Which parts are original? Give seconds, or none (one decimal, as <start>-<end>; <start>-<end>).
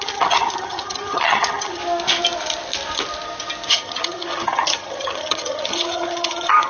1.8-3.7